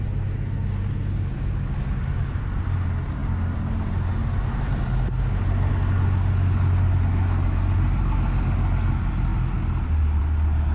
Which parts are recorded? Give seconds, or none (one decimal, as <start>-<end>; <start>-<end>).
0.0-10.7